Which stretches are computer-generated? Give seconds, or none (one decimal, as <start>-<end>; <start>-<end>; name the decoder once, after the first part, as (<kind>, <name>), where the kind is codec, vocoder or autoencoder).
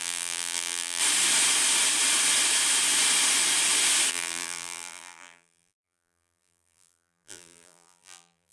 0.0-1.0 (vocoder, BigVGAN v2); 4.1-8.5